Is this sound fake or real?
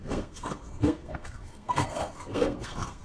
fake